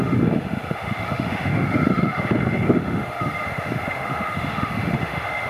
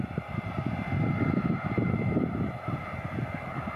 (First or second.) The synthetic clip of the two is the first